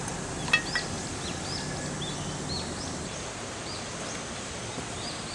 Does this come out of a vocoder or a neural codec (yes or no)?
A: no